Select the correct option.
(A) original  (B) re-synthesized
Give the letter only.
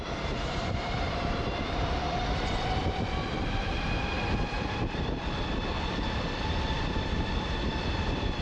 B